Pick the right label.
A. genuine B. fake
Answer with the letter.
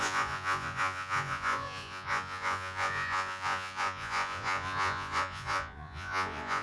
B